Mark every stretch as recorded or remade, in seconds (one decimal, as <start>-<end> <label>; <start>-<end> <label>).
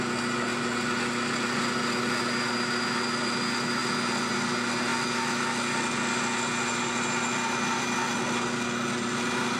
0.0-9.6 recorded